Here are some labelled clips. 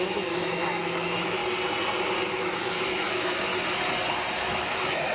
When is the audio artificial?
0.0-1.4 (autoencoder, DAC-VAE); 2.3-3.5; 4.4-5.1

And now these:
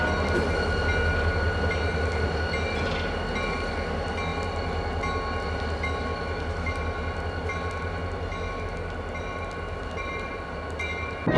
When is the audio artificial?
none